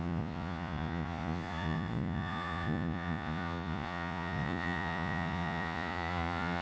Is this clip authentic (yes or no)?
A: no